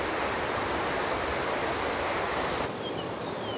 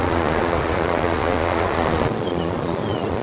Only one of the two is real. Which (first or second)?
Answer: first